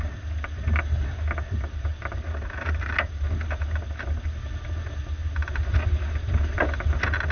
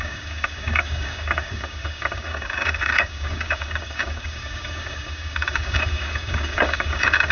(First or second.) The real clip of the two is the first